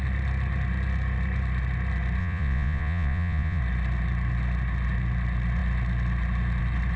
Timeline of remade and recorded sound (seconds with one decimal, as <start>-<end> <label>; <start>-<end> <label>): 0.0-2.2 recorded; 2.2-3.6 remade; 3.6-7.0 recorded